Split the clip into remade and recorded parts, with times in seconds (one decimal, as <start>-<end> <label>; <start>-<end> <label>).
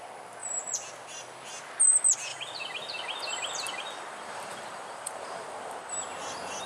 0.0-2.3 recorded; 2.3-5.9 remade; 5.9-6.7 recorded